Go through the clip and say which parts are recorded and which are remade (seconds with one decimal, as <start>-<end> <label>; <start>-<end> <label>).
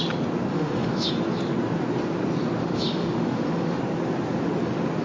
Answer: 0.0-0.5 recorded; 0.5-1.1 remade; 1.1-2.6 recorded; 2.6-3.8 remade; 3.8-5.0 recorded